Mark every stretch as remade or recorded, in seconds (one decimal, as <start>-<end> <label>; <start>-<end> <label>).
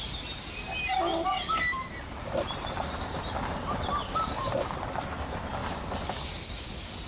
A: 0.0-1.1 recorded; 1.1-4.8 remade; 4.8-7.1 recorded